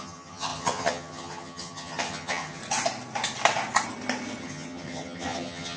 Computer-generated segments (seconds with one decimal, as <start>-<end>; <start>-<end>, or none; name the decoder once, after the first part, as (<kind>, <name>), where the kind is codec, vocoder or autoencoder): 0.0-2.6 (vocoder, HiFi-GAN); 4.4-5.8